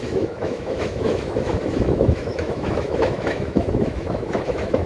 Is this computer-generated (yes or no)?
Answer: yes